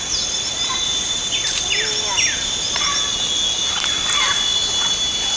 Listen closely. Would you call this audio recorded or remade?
recorded